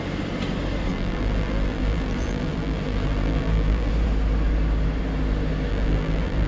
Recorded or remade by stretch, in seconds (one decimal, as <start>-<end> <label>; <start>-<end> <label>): 0.0-0.9 recorded; 0.9-3.9 remade; 3.9-5.7 recorded; 5.7-6.5 remade